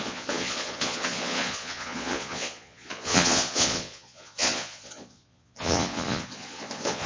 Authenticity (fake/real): fake